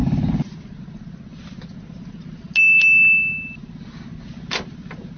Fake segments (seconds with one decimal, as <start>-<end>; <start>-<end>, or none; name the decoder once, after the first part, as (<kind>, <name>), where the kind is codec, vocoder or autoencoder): none